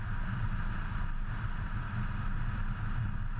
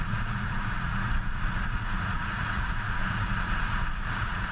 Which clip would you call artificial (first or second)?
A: second